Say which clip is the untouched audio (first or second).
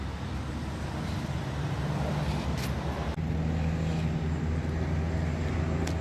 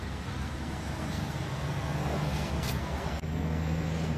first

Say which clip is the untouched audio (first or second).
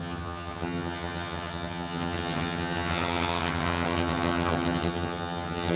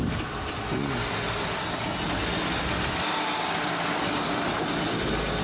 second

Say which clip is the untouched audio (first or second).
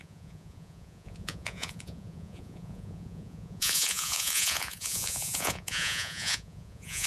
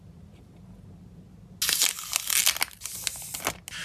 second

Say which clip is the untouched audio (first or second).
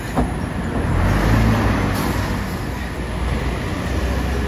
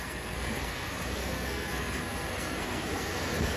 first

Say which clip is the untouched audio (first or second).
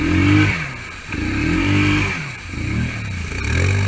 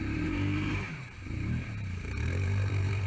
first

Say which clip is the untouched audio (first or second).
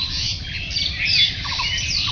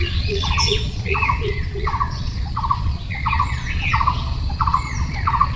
first